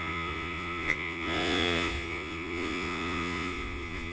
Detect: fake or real fake